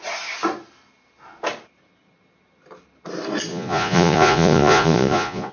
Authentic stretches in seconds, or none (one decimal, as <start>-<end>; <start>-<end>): 0.0-3.5